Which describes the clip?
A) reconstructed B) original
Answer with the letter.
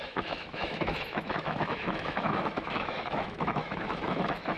A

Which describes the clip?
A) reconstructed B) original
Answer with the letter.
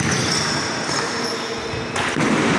B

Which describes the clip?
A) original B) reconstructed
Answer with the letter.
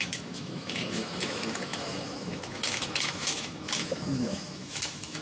B